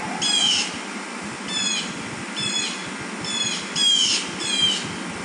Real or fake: real